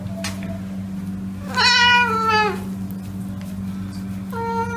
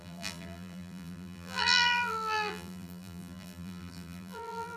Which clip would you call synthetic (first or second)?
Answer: second